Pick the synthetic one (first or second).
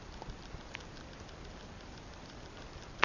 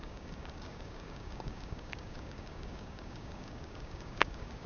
second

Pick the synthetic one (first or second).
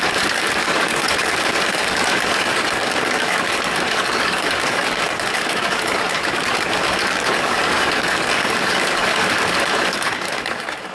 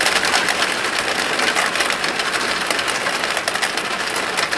first